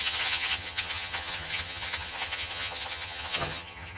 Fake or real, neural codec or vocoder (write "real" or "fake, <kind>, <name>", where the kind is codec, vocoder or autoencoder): fake, vocoder, HiFi-GAN